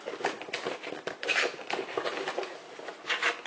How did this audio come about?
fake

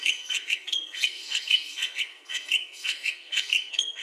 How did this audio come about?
fake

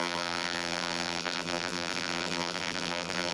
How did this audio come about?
fake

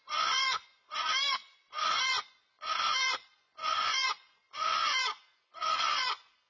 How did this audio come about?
fake